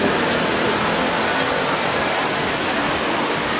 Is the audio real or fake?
real